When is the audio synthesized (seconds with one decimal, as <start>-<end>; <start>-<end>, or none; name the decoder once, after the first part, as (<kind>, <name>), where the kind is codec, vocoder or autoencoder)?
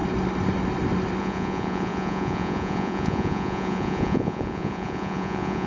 1.2-5.7 (vocoder, Vocos)